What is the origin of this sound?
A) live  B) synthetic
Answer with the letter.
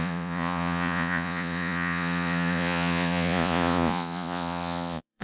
B